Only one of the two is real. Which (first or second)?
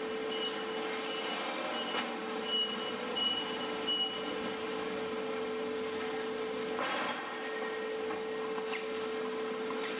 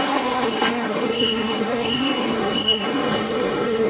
first